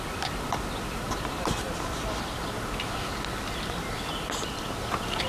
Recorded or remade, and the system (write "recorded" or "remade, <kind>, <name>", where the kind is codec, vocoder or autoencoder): recorded